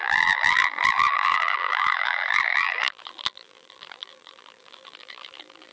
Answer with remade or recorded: remade